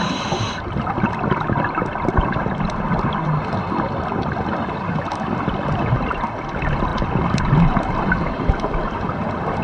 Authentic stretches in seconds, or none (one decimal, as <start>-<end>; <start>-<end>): 0.0-9.6

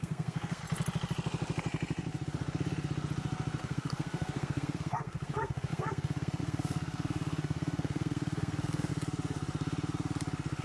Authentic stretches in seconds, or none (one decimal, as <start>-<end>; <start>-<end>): 0.6-3.6; 8.9-10.6

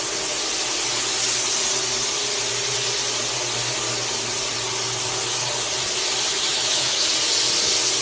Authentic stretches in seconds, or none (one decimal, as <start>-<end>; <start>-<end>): 0.0-6.3; 7.1-8.0

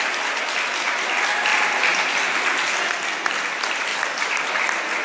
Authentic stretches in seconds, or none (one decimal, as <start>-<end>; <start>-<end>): 0.0-3.9; 4.5-5.0

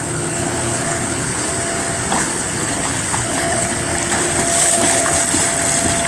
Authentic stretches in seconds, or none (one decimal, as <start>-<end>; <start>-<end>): 1.5-2.2; 3.9-4.6; 5.2-6.1

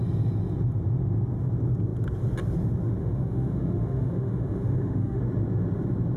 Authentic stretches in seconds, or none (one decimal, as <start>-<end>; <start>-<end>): 0.0-3.0; 5.2-6.2

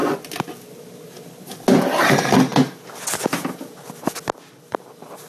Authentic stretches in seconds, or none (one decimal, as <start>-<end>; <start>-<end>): 0.0-5.3